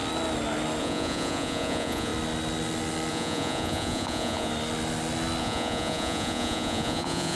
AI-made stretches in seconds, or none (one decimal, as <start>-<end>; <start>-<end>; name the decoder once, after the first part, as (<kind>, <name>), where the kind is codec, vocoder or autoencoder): 0.8-2.1 (vocoder, Vocos); 3.1-4.5; 5.4-7.3